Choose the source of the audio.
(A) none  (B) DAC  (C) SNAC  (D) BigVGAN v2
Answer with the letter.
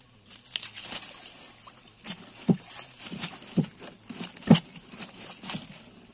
A